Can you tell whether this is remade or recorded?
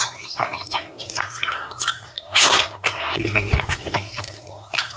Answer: remade